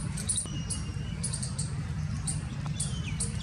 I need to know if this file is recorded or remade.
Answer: recorded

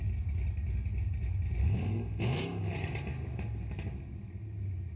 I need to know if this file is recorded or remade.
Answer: recorded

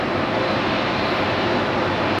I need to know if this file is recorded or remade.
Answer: recorded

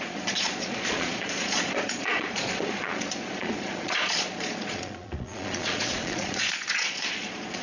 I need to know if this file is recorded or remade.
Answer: remade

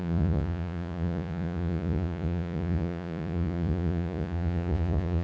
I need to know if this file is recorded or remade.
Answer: remade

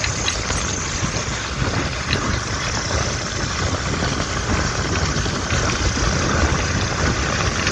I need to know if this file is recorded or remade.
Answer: recorded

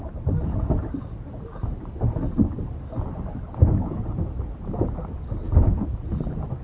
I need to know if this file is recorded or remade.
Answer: recorded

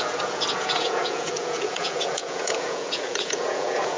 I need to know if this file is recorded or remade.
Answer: remade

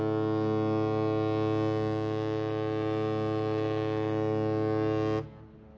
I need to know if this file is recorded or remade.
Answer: recorded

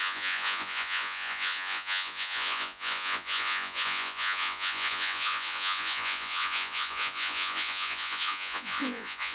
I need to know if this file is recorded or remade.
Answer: remade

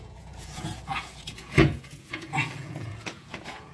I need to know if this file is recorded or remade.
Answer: remade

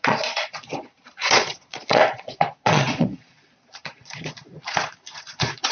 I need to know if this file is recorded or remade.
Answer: remade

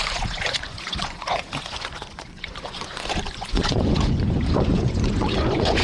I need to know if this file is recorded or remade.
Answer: remade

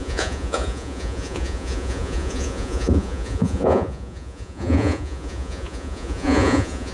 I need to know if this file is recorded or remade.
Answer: remade